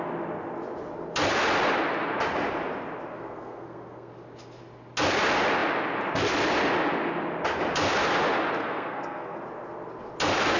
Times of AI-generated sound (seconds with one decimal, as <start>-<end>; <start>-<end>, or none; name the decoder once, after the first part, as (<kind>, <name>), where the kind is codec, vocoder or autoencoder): 3.1-4.1 (codec, SNAC); 8.6-9.4